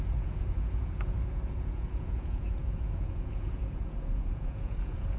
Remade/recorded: remade